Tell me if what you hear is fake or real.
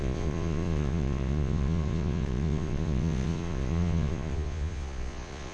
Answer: fake